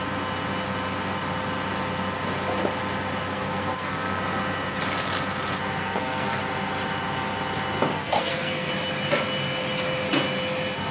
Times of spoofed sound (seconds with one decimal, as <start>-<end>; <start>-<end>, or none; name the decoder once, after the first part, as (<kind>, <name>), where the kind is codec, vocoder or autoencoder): 3.3-4.2 (codec, SNAC); 5.8-6.4; 7.9-8.7